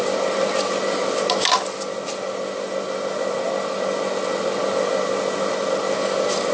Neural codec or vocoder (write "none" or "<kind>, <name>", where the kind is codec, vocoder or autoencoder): none